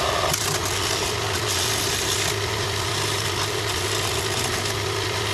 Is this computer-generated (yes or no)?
yes